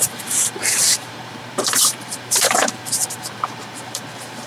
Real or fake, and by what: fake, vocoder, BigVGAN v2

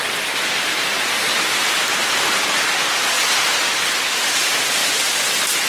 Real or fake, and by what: real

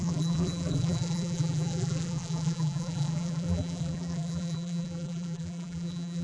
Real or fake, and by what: fake, vocoder, BigVGAN v2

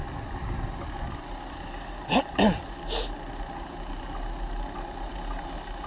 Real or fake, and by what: real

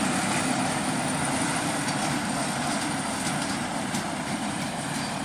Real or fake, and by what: fake, vocoder, BigVGAN v2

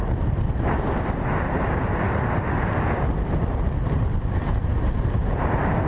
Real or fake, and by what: real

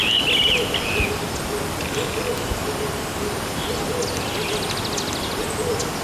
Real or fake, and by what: real